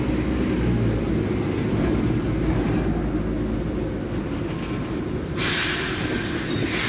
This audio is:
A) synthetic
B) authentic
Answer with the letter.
B